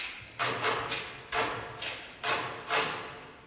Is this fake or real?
real